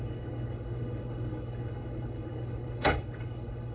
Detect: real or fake fake